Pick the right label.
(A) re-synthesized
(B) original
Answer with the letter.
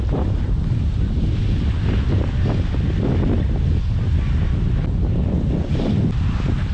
B